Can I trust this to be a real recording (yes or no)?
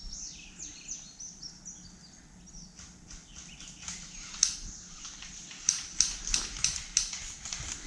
yes